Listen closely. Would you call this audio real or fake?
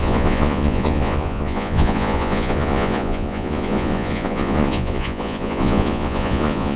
fake